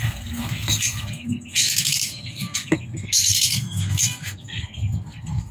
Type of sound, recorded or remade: remade